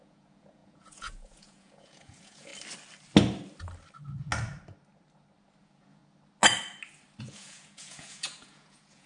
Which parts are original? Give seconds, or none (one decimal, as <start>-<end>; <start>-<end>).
2.5-5.6; 6.0-7.2